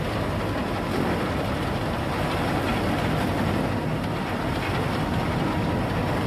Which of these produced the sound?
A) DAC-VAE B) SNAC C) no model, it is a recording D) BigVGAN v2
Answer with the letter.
C